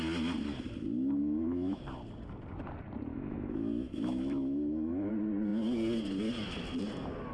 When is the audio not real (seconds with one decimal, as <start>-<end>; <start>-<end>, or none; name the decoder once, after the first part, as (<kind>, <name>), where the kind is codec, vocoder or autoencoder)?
1.2-1.8 (autoencoder, DAC-VAE); 3.1-5.1